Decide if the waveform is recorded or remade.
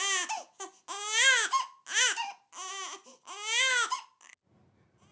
recorded